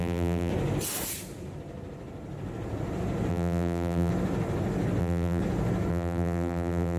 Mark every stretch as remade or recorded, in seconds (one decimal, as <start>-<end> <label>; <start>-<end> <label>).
0.0-0.5 remade; 0.5-3.3 recorded; 3.3-4.1 remade; 4.1-5.0 recorded; 5.0-5.4 remade; 5.4-5.9 recorded; 5.9-7.0 remade